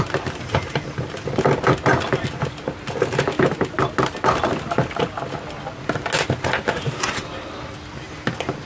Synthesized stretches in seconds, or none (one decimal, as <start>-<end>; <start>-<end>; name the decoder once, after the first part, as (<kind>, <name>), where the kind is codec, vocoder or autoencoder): none

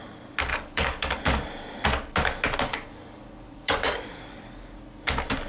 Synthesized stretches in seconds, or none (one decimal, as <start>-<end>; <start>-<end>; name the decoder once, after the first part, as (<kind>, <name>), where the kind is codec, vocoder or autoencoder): 0.5-1.2 (codec, DAC); 2.7-4.8